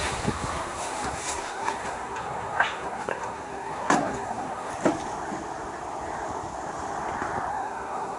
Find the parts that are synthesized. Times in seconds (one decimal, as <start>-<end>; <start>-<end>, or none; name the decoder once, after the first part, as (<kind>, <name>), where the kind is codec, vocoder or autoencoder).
0.0-4.7 (codec, SNAC); 7.5-8.2